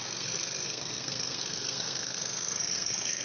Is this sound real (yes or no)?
no